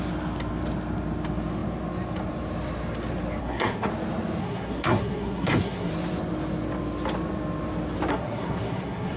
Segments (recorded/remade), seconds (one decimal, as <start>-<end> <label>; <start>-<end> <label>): 0.0-3.4 recorded; 3.4-3.9 remade; 3.9-4.4 recorded; 4.4-5.9 remade; 5.9-8.1 recorded; 8.1-9.2 remade